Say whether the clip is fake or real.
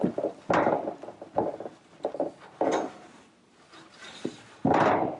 real